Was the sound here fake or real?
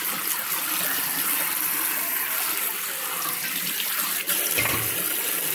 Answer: real